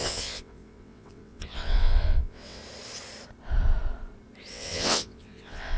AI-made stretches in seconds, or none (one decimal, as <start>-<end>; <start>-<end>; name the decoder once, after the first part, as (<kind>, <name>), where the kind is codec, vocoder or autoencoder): 0.0-2.6 (vocoder, WaveNeXt); 4.5-5.8